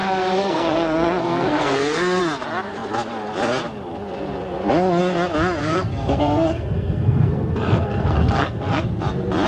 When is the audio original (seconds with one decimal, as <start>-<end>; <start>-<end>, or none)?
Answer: 2.2-5.6; 8.8-9.5

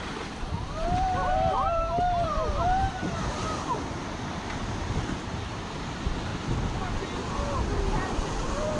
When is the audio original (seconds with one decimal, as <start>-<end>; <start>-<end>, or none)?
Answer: 6.3-8.1